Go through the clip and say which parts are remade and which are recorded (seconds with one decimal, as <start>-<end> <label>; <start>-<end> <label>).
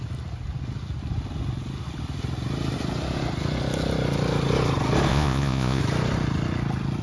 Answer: 0.0-5.1 recorded; 5.1-5.8 remade; 5.8-7.0 recorded